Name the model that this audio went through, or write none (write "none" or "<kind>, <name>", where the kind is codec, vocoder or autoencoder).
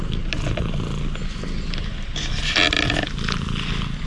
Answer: none